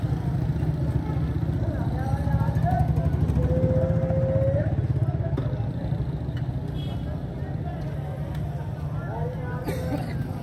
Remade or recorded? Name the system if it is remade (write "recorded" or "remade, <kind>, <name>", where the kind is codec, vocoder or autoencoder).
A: recorded